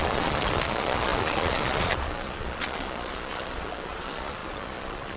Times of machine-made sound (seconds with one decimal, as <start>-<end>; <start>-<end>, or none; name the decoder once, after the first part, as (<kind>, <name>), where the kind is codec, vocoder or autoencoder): 0.0-5.2 (vocoder, Vocos)